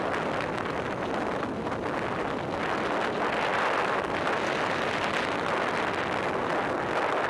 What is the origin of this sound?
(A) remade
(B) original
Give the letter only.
B